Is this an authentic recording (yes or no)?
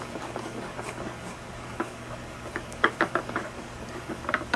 no